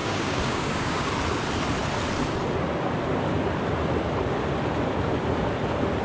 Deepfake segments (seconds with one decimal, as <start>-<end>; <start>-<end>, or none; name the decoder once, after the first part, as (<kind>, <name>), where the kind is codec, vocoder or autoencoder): 0.0-1.1 (codec, DAC)